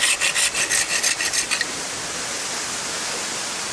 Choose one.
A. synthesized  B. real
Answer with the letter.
B